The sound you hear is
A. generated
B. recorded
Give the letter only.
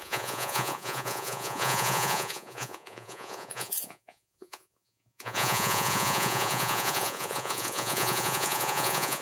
A